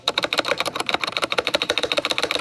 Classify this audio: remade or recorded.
remade